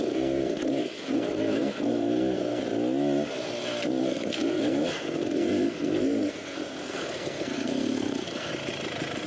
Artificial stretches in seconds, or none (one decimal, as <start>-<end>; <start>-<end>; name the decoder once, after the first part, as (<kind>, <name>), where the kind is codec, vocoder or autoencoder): 0.0-2.6 (codec, SNAC); 4.0-8.5